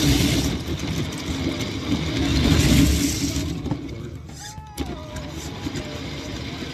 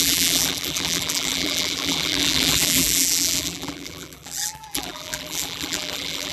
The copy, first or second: second